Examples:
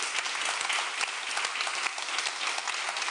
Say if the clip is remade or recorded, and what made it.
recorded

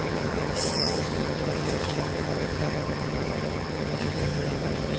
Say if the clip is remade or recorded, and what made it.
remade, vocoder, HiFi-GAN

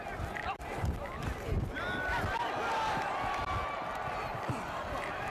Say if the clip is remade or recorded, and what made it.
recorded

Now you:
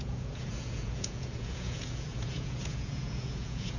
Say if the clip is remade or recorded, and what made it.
remade, vocoder, Vocos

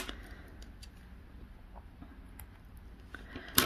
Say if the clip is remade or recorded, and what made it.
recorded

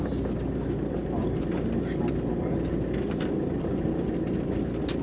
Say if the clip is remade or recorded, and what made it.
recorded